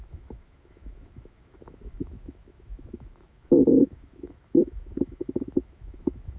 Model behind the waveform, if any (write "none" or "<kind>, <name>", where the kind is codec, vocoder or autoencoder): autoencoder, DAC-VAE